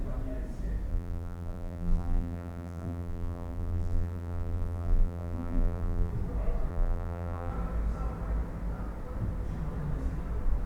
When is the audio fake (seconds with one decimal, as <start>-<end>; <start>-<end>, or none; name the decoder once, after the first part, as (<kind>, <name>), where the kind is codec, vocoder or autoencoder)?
0.9-6.1 (vocoder, BigVGAN v2); 6.7-7.5